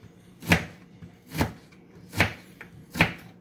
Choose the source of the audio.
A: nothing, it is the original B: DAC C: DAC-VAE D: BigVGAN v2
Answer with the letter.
D